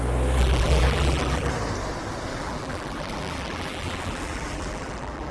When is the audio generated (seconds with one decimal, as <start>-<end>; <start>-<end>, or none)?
0.4-1.5; 2.3-5.3